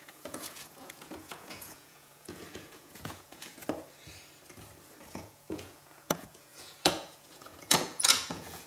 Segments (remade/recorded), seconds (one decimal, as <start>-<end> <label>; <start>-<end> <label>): 0.0-3.6 remade; 3.6-5.1 recorded; 5.1-8.7 remade